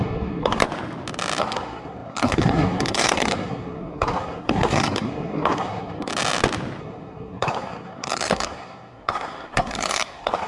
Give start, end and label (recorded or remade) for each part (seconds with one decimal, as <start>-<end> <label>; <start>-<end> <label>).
0.0-0.6 remade; 0.6-1.4 recorded; 1.4-6.1 remade; 6.1-6.8 recorded; 6.8-10.5 remade